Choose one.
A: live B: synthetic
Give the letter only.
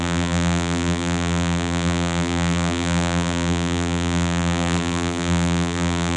B